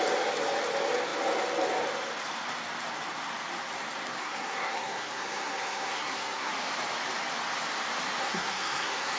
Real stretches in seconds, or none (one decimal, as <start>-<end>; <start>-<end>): 0.0-4.2; 6.5-8.2